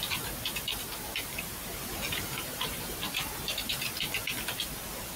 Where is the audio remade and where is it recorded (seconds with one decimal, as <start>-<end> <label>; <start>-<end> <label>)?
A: 0.0-1.6 recorded; 1.6-3.7 remade; 3.7-5.2 recorded